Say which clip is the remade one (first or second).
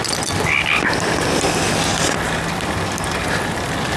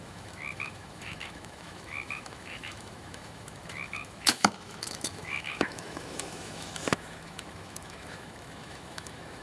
second